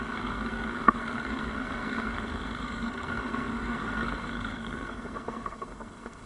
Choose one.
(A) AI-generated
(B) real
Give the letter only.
A